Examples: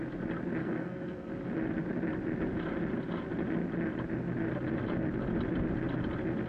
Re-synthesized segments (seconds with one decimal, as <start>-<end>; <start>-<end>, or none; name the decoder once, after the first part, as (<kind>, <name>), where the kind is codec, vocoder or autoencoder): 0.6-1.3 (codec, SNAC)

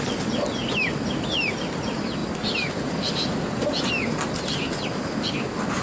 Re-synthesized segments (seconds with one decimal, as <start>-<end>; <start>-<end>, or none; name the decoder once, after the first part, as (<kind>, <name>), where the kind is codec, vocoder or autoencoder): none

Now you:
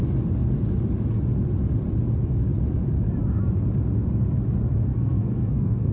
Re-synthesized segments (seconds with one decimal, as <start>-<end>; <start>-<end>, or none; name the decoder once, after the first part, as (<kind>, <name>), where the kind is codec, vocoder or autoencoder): 4.9-5.9 (codec, SNAC)

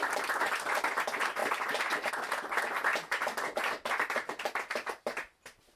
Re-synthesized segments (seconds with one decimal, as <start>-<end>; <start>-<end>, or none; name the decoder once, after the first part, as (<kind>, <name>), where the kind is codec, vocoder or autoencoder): none